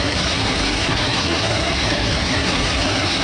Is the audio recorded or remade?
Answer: remade